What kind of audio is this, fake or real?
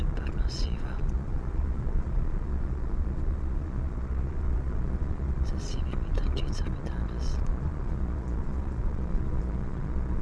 fake